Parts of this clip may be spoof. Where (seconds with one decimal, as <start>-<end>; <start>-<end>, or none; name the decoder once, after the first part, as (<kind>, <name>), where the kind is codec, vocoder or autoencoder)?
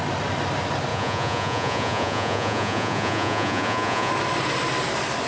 0.9-4.1 (vocoder, Vocos)